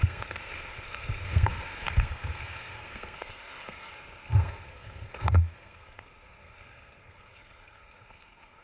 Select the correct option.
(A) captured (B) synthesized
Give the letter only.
B